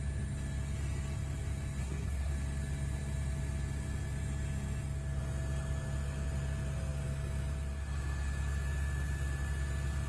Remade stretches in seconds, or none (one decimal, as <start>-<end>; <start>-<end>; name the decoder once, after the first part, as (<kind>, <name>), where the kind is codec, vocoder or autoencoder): 1.8-2.3 (codec, SNAC)